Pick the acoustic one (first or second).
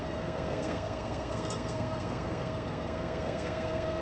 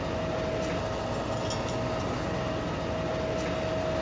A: second